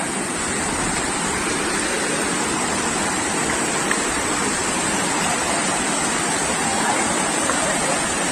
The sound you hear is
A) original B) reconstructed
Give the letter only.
A